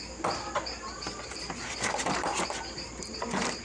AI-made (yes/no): no